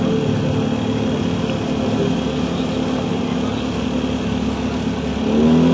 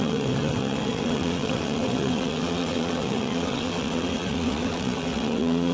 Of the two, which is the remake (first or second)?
second